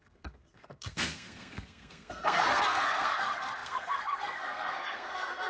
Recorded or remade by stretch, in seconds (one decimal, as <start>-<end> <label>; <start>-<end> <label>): 0.0-5.5 remade